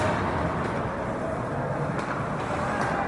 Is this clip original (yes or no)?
yes